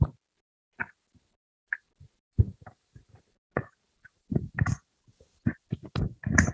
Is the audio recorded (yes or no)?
yes